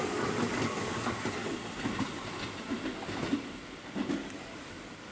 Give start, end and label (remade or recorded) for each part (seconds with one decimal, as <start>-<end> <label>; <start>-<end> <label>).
0.0-1.4 remade; 1.4-4.1 recorded; 4.1-5.1 remade